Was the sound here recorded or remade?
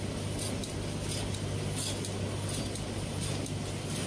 recorded